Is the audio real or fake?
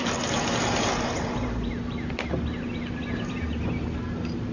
fake